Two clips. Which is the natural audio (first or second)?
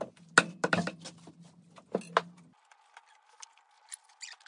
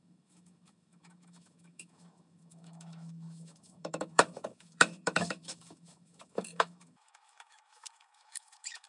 first